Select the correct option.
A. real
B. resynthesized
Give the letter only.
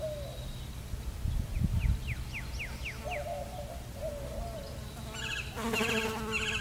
A